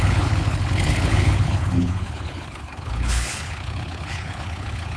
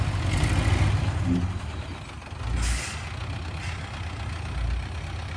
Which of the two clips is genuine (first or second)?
second